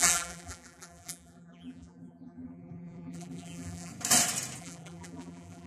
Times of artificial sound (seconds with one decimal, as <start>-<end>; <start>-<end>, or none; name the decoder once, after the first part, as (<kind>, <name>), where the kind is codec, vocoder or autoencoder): 0.0-3.9 (vocoder, BigVGAN v2); 4.6-5.7